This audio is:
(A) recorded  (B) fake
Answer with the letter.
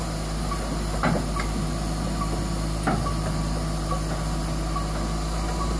A